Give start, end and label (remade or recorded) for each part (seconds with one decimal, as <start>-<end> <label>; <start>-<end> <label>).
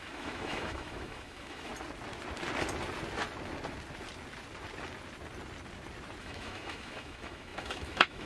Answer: 0.0-1.7 remade; 1.7-6.2 recorded; 6.2-8.3 remade